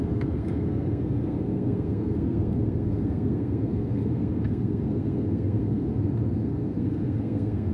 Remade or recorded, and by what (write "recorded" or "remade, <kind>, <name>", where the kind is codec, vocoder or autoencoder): remade, codec, SNAC